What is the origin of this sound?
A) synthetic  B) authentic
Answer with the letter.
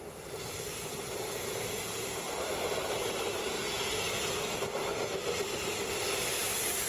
B